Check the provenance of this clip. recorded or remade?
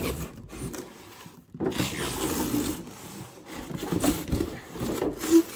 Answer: recorded